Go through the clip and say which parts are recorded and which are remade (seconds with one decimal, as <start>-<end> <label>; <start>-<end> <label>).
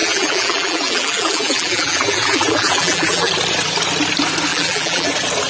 0.0-3.3 remade; 3.3-4.5 recorded; 4.5-5.1 remade; 5.1-5.5 recorded